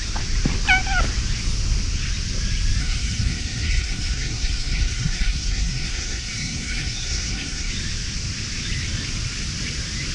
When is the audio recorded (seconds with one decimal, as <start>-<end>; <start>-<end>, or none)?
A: 0.0-2.8; 7.7-10.1